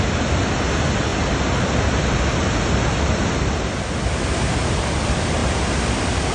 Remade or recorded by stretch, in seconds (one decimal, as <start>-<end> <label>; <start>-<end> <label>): 0.0-6.3 recorded